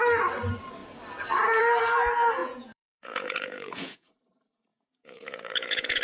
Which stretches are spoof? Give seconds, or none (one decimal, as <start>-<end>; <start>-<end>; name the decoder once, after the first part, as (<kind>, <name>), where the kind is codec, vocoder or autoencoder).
2.4-4.1 (vocoder, Vocos); 4.7-6.0